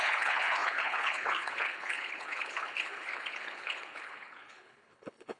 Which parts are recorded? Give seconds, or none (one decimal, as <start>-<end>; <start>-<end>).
none